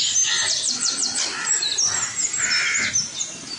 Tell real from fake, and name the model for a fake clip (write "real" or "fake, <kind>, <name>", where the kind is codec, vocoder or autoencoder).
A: real